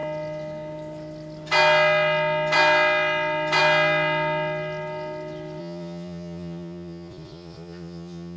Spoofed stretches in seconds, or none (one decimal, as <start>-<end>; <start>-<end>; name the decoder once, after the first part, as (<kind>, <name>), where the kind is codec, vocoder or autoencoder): 5.6-8.4 (vocoder, Vocos)

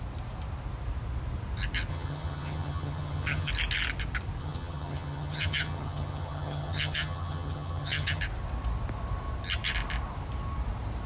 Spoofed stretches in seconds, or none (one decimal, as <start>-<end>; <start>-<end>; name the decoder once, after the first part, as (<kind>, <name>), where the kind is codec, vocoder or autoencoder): 1.9-3.5 (vocoder, HiFi-GAN); 4.4-8.2

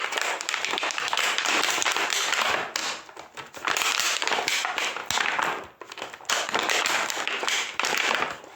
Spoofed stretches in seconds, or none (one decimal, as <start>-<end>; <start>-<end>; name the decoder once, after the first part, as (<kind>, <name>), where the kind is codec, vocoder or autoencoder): 0.0-2.8 (vocoder, BigVGAN v2); 3.8-5.0; 6.3-8.6